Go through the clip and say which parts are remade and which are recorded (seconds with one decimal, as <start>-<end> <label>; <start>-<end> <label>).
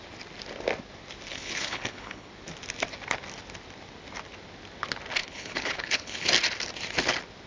0.0-1.3 recorded; 1.3-2.3 remade; 2.3-5.2 recorded; 5.2-6.3 remade; 6.3-7.5 recorded